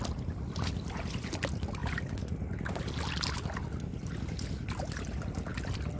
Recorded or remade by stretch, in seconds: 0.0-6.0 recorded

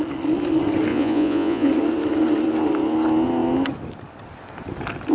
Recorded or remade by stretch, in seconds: 0.0-0.9 recorded; 0.9-1.7 remade; 1.7-5.1 recorded

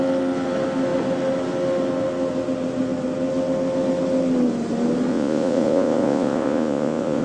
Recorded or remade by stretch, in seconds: 0.0-5.1 recorded; 5.1-7.2 remade

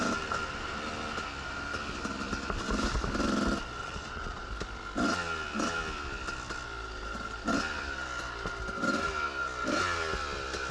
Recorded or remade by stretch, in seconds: 0.0-3.8 recorded; 3.8-4.5 remade; 4.5-10.7 recorded

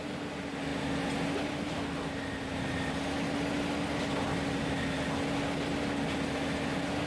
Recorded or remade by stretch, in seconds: 0.0-7.1 recorded